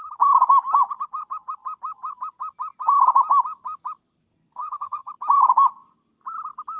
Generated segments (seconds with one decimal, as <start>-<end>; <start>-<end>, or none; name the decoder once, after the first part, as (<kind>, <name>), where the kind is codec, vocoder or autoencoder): 4.3-5.1 (codec, SNAC)